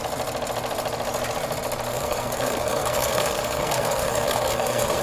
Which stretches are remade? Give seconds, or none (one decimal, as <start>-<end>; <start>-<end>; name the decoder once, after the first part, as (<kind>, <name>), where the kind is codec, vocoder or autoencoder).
1.9-5.0 (codec, SNAC)